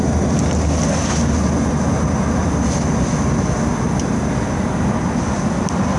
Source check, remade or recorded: recorded